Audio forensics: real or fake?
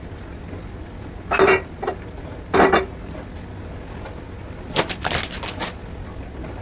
real